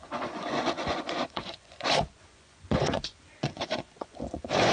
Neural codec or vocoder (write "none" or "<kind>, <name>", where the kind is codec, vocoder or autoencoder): vocoder, Vocos